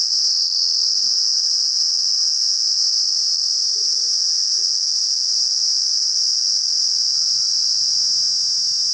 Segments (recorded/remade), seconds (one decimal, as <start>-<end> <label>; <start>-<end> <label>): 0.0-8.0 remade; 8.0-8.9 recorded